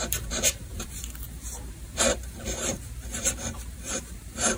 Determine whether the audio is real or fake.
fake